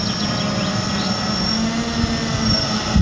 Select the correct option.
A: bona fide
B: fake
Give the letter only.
A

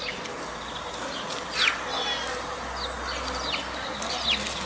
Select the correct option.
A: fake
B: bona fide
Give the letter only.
B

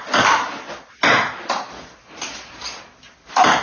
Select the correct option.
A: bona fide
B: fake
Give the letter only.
A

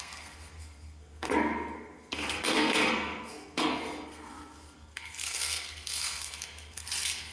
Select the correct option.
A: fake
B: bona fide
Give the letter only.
A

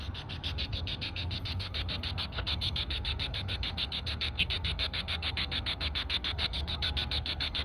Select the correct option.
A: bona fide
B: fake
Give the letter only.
B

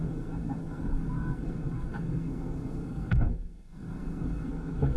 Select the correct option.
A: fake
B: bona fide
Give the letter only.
A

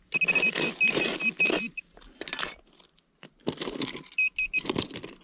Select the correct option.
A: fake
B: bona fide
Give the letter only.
B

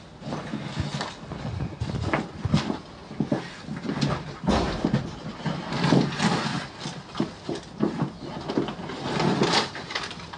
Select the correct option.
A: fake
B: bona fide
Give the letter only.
B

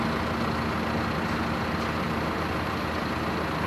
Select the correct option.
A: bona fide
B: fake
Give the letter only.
A